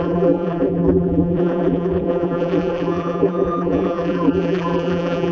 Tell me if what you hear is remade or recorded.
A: remade